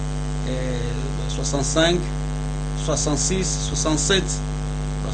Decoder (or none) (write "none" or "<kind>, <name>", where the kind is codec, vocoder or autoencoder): none